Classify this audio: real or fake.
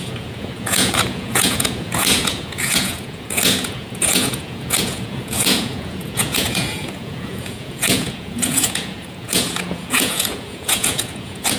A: fake